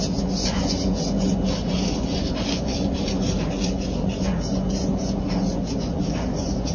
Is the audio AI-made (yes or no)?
yes